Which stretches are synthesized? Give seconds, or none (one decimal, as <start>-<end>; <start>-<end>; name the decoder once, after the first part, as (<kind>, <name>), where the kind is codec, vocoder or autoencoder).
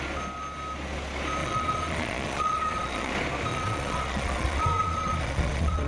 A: 1.4-3.1 (vocoder, Vocos); 3.5-5.9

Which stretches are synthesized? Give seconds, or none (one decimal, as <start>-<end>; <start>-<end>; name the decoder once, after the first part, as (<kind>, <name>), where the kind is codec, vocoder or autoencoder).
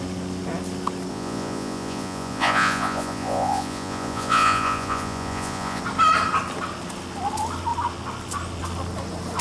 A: 1.1-5.8 (vocoder, Vocos)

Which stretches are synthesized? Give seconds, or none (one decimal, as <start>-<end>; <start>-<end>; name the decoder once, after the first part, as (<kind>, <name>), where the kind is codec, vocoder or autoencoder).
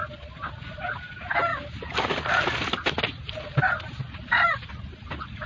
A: none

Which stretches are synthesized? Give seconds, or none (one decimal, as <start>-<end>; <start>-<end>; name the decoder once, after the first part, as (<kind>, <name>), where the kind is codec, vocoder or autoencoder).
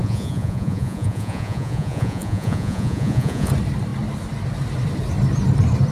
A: 0.0-3.5 (vocoder, Vocos)